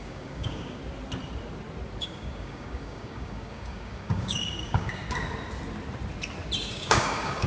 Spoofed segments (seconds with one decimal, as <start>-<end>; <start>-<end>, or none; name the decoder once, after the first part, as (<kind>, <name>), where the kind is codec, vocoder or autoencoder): 0.0-0.8 (codec, DAC); 2.0-5.0; 6.7-7.5